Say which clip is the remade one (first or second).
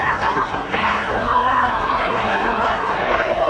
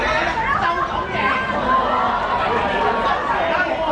first